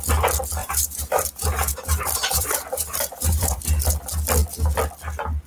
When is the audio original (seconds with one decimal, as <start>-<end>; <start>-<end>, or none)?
0.0-0.6; 3.6-5.5